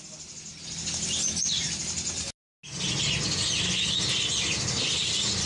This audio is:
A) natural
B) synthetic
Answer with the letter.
A